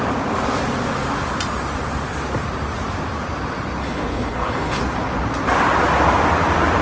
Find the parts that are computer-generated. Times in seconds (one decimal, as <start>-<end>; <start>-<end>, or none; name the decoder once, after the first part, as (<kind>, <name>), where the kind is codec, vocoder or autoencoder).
3.8-4.8 (codec, HILCodec)